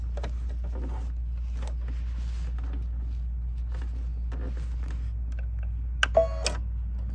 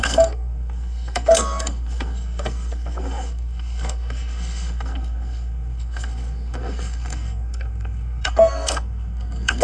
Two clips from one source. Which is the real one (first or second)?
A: first